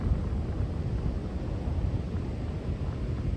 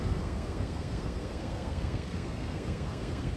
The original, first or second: first